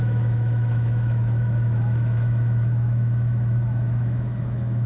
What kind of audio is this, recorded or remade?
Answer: remade